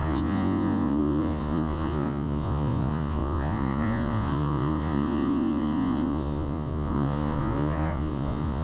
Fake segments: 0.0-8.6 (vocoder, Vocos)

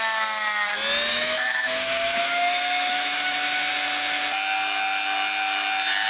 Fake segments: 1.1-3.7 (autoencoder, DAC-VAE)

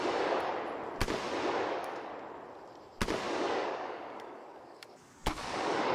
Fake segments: 0.0-0.5 (codec, DAC); 1.7-2.1; 3.3-5.9

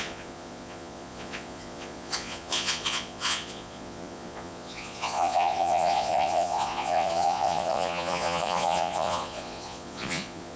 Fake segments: 0.0-10.6 (vocoder, Vocos)

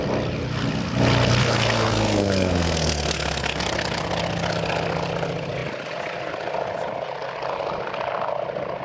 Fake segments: 1.4-3.6 (codec, SNAC)